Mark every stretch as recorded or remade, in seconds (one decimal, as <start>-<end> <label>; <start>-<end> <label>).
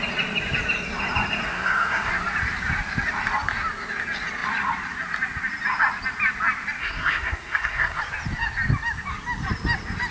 0.0-1.5 recorded; 1.5-2.1 remade; 2.1-6.8 recorded; 6.8-8.0 remade; 8.0-10.1 recorded